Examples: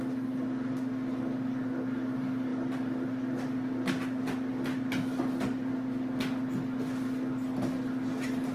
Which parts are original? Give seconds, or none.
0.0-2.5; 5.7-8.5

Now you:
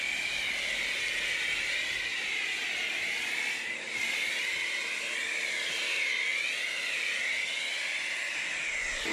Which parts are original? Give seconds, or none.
0.0-2.1; 5.7-8.2; 8.7-9.1

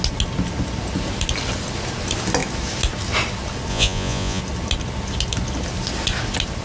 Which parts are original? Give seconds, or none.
0.0-3.7; 4.4-6.6

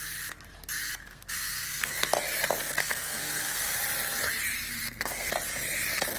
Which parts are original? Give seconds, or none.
0.0-1.0; 2.0-2.8; 3.8-4.7; 5.3-6.2

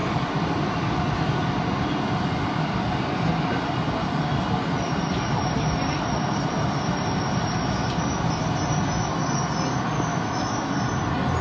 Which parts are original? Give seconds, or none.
0.0-10.1; 10.7-11.4

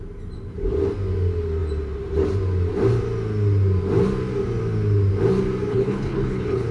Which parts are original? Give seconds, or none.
0.0-5.7

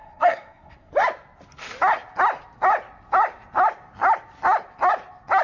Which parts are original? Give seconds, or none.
0.9-5.4

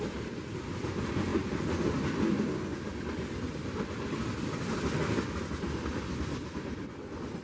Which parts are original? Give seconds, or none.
0.0-7.4